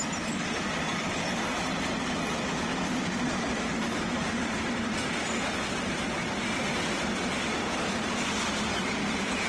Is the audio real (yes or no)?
yes